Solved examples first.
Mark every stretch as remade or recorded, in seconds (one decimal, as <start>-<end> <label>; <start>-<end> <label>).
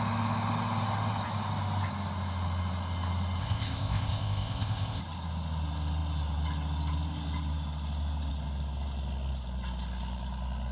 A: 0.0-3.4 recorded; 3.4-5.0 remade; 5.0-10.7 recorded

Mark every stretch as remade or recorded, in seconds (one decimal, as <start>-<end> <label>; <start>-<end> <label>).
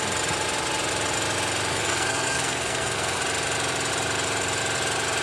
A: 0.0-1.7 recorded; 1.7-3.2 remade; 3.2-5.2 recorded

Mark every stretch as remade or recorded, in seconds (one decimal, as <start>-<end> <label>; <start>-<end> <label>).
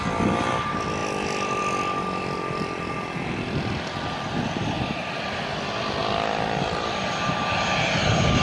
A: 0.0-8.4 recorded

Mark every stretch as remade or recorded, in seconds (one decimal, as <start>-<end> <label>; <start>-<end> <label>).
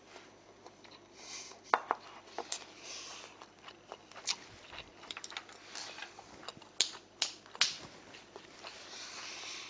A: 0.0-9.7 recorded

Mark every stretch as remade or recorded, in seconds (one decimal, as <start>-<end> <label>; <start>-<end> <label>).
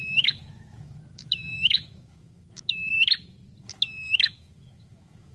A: 0.0-3.0 remade; 3.0-3.6 recorded; 3.6-5.3 remade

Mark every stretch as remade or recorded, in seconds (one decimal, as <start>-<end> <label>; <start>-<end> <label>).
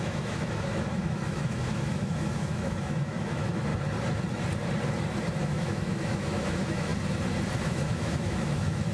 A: 0.0-3.7 remade; 3.7-5.4 recorded; 5.4-6.9 remade; 6.9-7.6 recorded; 7.6-8.9 remade